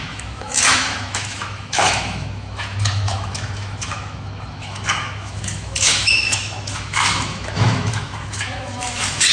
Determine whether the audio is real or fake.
fake